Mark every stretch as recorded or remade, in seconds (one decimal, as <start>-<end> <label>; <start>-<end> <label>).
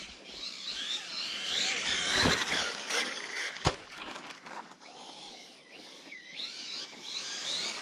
0.0-7.8 remade